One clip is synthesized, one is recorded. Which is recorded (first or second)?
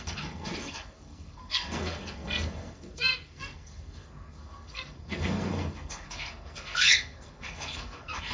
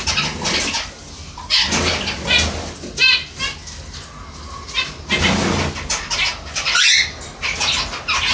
second